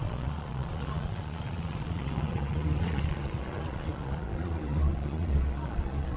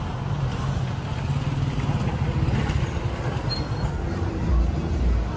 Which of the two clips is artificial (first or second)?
first